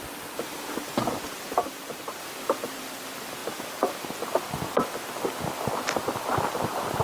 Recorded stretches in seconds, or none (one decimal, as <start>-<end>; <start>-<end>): 0.0-1.6; 2.2-3.4; 3.9-7.0